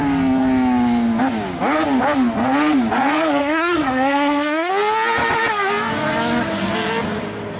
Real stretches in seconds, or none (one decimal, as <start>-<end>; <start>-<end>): 0.0-3.4; 4.7-7.6